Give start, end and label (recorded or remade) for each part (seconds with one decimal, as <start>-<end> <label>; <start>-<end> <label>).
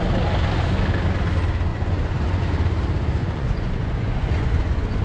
0.0-1.7 recorded; 1.7-2.4 remade; 2.4-3.2 recorded; 3.2-5.0 remade